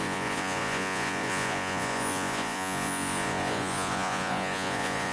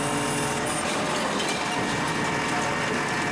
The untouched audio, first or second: second